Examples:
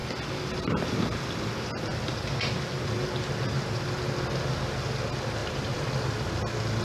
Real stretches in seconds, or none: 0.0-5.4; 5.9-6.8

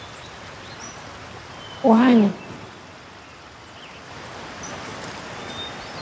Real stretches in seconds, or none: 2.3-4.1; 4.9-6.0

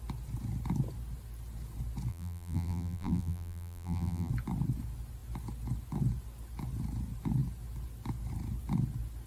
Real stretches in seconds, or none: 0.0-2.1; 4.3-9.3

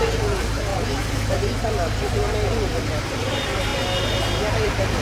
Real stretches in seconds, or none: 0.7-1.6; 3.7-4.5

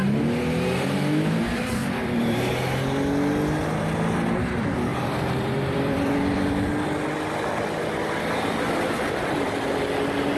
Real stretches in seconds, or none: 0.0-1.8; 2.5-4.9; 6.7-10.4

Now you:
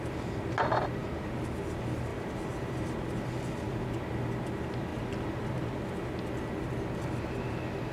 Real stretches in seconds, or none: 0.0-2.1; 2.9-7.9